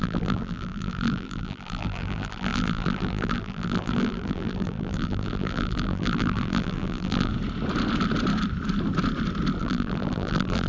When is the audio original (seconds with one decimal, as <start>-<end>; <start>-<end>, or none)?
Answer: 7.3-9.6